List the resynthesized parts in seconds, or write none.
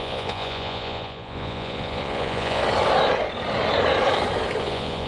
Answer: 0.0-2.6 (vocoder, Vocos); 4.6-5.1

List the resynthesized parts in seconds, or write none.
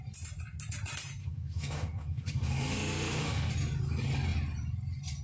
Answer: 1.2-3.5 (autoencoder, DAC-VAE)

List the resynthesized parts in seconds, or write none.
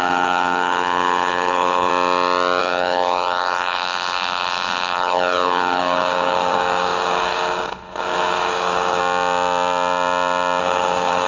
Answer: 0.0-1.9 (codec, HILCodec); 2.6-9.0; 10.6-11.3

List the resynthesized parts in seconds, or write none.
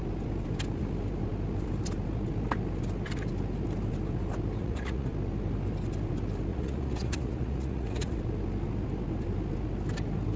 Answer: 4.6-5.1 (vocoder, Vocos); 6.5-8.2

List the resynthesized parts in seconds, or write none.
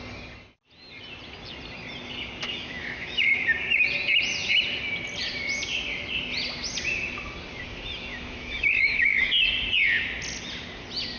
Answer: 2.5-3.4 (autoencoder, DAC-VAE); 8.1-9.3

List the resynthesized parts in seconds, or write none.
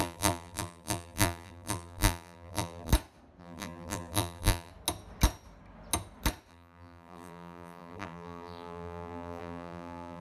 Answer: 0.0-2.9 (vocoder, BigVGAN v2); 3.4-4.7; 6.5-10.2